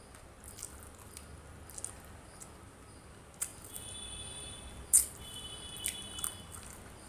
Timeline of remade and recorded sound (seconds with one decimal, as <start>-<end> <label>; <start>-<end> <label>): 0.0-7.1 recorded